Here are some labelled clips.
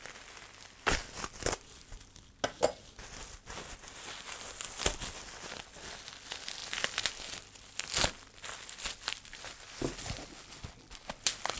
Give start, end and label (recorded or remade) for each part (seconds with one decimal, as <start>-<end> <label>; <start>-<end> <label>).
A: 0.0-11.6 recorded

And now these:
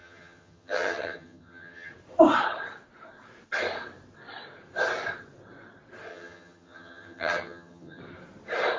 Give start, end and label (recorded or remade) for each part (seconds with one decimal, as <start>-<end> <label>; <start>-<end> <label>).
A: 0.0-1.9 remade; 1.9-6.1 recorded; 6.1-8.0 remade; 8.0-8.8 recorded

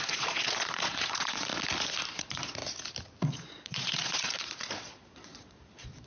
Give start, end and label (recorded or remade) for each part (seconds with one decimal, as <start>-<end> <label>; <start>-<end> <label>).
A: 0.0-1.5 remade; 1.5-2.1 recorded; 2.1-2.6 remade; 2.6-3.3 recorded; 3.3-6.1 remade

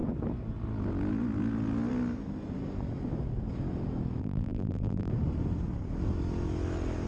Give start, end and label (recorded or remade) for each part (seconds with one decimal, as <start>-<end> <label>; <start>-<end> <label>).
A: 0.0-4.2 recorded; 4.2-5.1 remade; 5.1-7.1 recorded